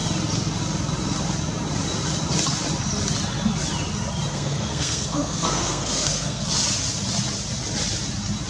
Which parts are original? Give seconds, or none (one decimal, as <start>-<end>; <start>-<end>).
0.0-4.3; 6.4-8.5